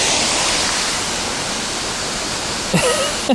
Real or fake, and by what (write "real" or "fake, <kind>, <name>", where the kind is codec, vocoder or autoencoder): real